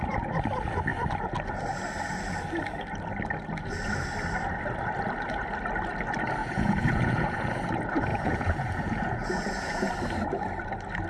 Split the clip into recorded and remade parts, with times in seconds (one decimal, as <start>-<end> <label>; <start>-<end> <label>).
0.0-6.4 recorded; 6.4-7.6 remade; 7.6-8.1 recorded; 8.1-9.9 remade; 9.9-11.1 recorded